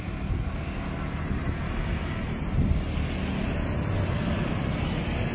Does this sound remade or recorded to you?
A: recorded